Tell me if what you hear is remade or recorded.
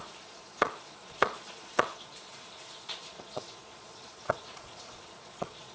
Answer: remade